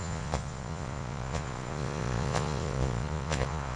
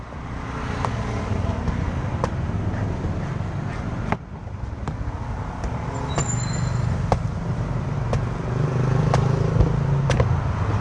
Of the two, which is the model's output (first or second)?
first